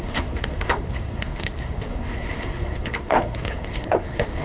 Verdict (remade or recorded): remade